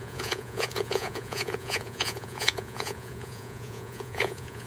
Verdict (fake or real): fake